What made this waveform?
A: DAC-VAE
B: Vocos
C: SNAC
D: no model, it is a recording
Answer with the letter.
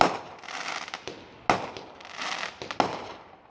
D